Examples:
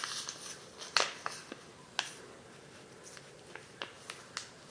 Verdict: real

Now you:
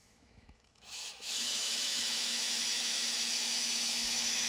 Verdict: fake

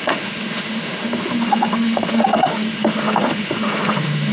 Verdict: fake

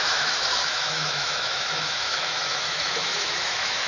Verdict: fake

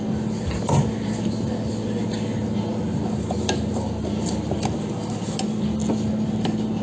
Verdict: real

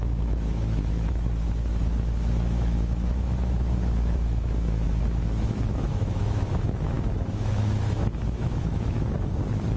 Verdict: fake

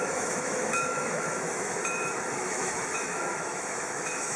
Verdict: fake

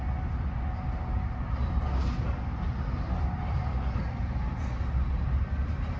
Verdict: real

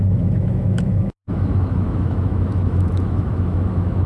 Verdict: fake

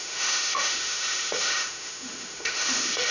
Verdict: fake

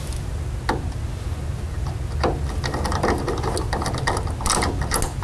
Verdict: real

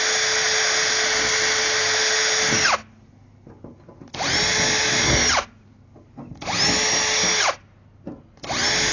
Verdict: real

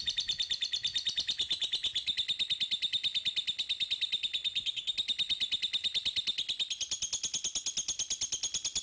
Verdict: real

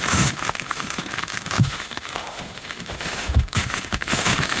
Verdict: fake